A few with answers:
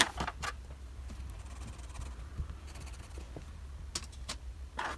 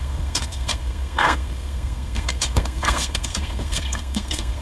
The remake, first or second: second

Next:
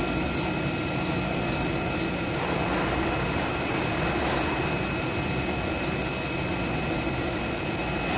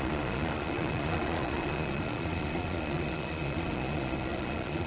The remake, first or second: second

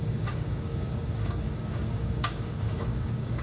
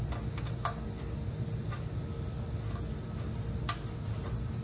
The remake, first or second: first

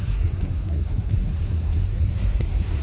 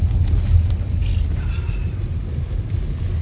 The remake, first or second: first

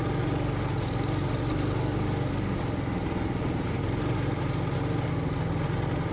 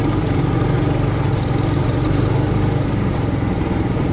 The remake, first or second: second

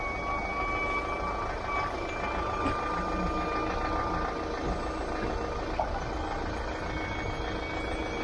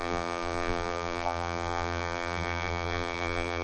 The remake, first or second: second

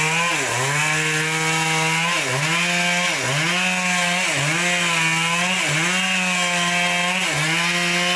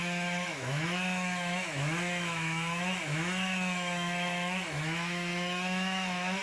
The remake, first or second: second